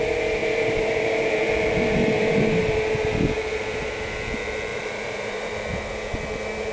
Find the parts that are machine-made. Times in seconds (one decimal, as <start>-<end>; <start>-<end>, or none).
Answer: 0.4-1.5; 2.0-2.6; 4.7-5.5